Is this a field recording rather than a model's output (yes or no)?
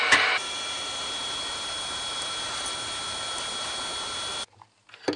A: yes